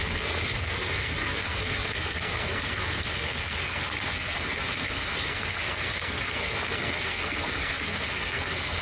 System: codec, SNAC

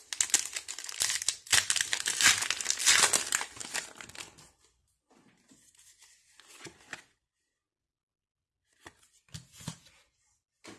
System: none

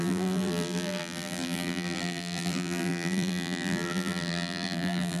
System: vocoder, BigVGAN v2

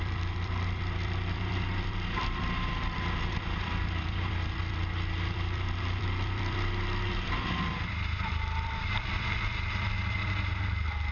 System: vocoder, BigVGAN v2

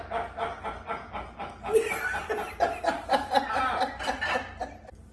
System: none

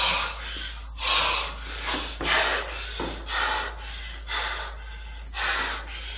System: none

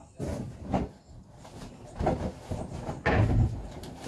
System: none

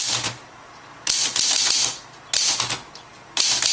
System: none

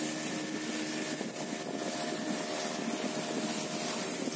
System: none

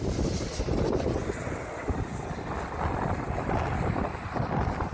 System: none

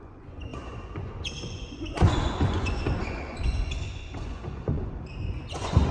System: vocoder, Vocos